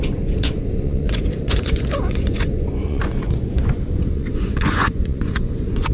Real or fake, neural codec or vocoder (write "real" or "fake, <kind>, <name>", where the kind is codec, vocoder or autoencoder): fake, vocoder, Vocos